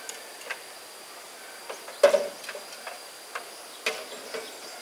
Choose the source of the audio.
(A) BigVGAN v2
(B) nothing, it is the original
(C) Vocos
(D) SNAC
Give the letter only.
B